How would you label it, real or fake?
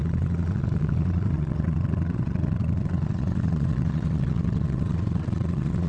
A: fake